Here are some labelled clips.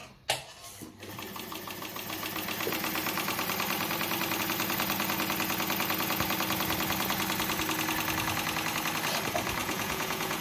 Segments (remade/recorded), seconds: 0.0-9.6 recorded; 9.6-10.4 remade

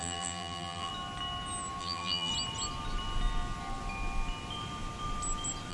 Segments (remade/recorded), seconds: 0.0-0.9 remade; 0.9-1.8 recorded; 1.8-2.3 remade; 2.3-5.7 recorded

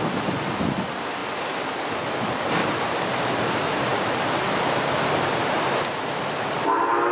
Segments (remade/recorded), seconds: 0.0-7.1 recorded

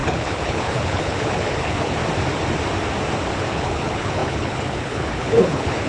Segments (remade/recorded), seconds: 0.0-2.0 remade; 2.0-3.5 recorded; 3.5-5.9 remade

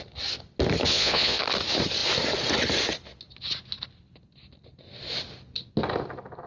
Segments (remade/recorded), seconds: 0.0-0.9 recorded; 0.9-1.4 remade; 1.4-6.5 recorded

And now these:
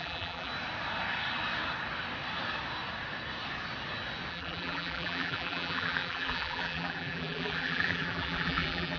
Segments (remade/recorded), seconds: 0.0-0.5 remade; 0.5-4.3 recorded; 4.3-9.0 remade